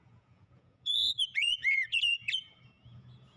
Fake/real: fake